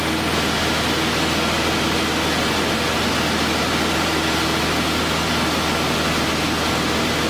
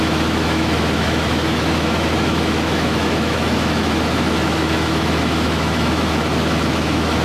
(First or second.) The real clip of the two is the first